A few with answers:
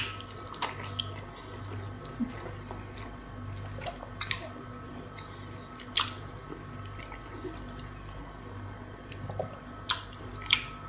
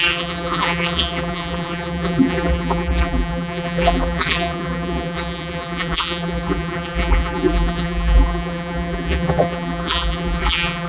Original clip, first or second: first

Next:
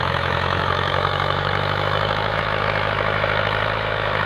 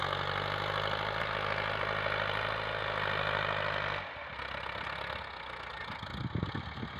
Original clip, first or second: second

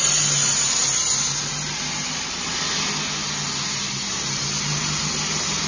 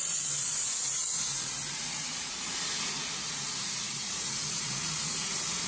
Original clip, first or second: first